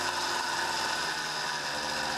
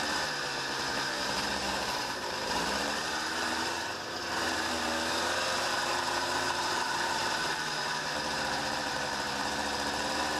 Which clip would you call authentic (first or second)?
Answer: first